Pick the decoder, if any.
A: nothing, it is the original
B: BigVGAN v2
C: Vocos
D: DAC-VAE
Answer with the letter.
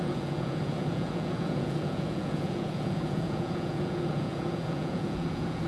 C